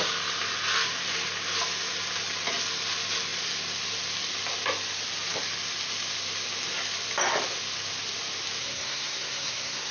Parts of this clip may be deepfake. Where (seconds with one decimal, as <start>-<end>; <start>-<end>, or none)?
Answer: 8.6-9.9